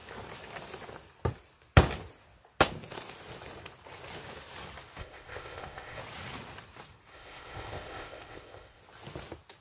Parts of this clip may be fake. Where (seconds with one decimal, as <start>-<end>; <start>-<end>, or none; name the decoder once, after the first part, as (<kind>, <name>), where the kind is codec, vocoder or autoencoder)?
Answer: 5.0-6.0 (codec, ZipCodec); 7.1-8.8